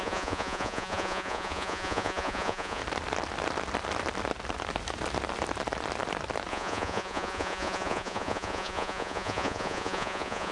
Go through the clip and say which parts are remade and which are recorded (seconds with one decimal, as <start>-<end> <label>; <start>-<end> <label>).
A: 0.0-2.8 remade; 2.8-6.5 recorded; 6.5-10.5 remade